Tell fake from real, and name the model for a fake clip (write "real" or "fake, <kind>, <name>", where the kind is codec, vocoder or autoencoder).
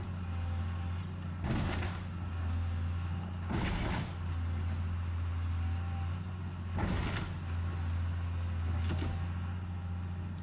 real